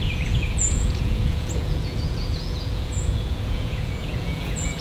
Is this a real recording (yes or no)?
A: no